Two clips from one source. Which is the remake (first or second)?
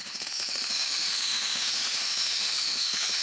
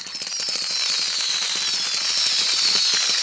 first